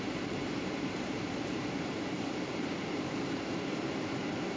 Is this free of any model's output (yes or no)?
no